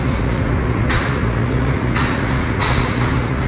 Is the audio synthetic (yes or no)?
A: yes